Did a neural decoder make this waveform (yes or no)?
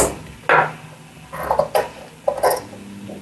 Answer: no